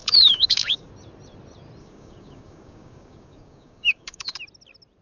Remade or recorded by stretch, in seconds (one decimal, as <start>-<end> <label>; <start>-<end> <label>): 0.0-0.9 remade; 0.9-1.8 recorded; 1.8-4.4 remade; 4.4-5.0 recorded